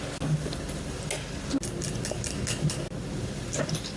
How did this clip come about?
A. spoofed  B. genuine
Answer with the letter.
B